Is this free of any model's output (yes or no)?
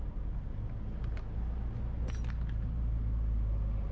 yes